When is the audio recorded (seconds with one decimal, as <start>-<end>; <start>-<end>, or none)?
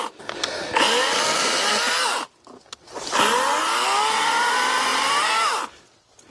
0.0-6.3